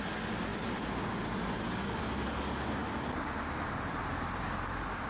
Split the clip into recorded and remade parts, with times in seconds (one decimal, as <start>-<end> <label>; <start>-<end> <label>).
0.0-5.1 recorded